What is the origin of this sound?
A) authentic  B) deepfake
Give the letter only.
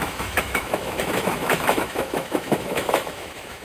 B